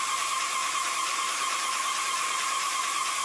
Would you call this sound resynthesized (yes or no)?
yes